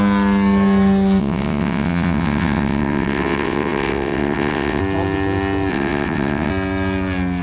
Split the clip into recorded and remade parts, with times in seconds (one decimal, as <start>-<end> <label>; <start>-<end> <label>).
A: 0.0-1.2 recorded; 1.2-4.8 remade; 4.8-5.7 recorded; 5.7-6.5 remade; 6.5-7.4 recorded